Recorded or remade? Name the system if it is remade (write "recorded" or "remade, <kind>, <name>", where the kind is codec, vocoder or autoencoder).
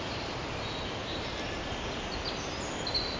recorded